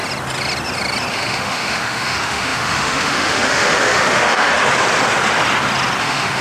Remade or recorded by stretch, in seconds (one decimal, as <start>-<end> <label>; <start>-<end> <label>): 0.0-1.1 recorded; 1.1-4.5 remade; 4.5-6.0 recorded; 6.0-6.4 remade